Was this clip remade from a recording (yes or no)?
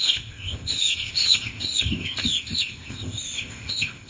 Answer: yes